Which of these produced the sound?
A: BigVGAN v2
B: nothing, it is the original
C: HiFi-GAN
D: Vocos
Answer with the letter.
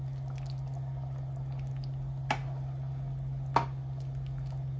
B